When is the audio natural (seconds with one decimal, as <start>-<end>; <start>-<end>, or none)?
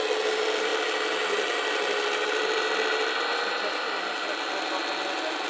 0.0-5.5